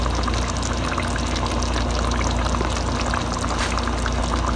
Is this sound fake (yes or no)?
no